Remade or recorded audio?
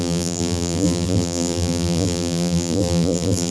remade